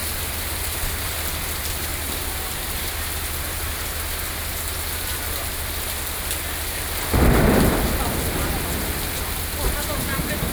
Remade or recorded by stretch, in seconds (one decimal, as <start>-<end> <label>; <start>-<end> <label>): 0.0-1.9 recorded; 1.9-2.7 remade; 2.7-10.5 recorded